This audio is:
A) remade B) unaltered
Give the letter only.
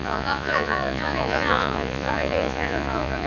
A